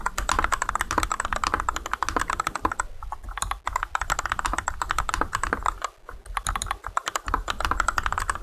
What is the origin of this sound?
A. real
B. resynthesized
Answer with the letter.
A